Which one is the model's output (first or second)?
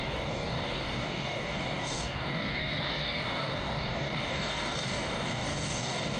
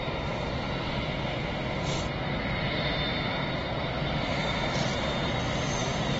first